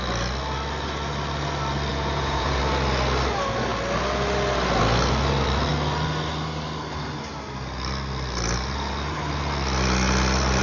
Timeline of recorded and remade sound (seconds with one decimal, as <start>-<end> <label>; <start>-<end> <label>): 0.0-1.9 recorded; 1.9-2.6 remade; 2.6-10.6 recorded